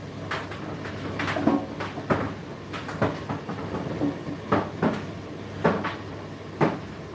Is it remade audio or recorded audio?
recorded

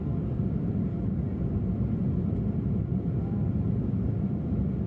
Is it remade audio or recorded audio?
remade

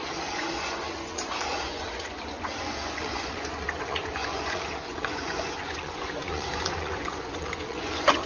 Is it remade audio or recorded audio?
remade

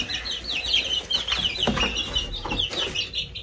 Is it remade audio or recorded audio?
recorded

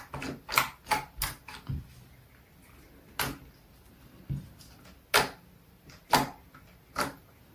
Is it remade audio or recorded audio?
recorded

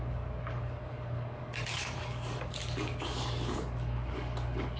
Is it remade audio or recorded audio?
remade